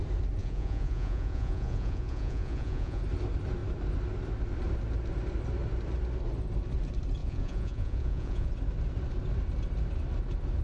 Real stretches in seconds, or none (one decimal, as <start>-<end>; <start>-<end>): 0.0-0.4; 3.0-7.2; 8.5-10.6